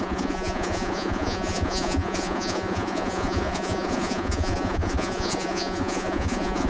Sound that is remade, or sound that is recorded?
remade